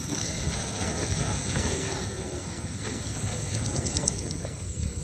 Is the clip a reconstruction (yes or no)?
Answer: yes